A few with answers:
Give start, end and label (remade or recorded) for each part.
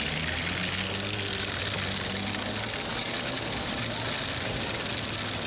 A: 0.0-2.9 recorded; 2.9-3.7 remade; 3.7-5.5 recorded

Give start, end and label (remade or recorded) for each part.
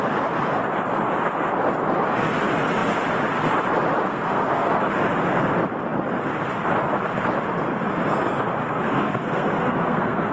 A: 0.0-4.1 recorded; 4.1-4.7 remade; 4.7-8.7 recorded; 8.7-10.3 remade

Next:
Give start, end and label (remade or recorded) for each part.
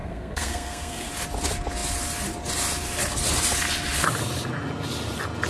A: 0.0-1.1 remade; 1.1-5.5 recorded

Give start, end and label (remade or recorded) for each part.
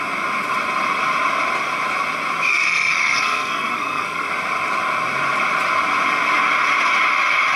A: 0.0-2.5 recorded; 2.5-4.3 remade; 4.3-7.6 recorded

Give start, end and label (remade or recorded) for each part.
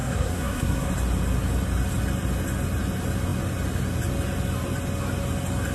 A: 0.0-0.9 remade; 0.9-5.7 recorded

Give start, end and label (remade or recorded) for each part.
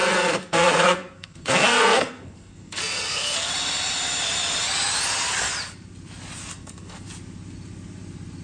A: 0.0-3.5 remade; 3.5-6.5 recorded; 6.5-7.1 remade; 7.1-8.4 recorded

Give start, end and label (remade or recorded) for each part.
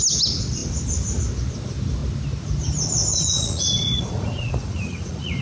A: 0.0-3.1 recorded; 3.1-5.4 remade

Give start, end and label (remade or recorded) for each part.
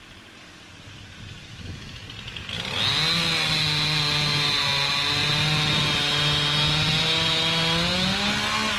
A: 0.0-1.5 recorded; 1.5-2.0 remade; 2.0-8.8 recorded